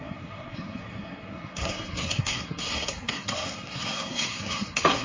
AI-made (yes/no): yes